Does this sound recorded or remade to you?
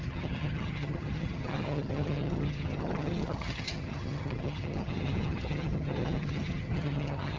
remade